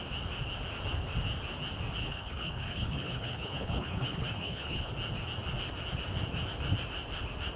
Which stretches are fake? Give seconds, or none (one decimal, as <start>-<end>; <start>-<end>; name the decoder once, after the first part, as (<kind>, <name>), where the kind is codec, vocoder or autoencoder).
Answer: 2.0-4.9 (codec, HILCodec)